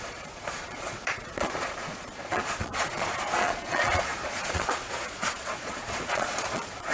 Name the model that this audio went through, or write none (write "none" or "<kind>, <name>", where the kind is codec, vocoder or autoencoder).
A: vocoder, Vocos